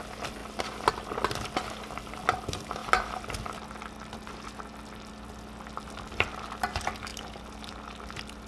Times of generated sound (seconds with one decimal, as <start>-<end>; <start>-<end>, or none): none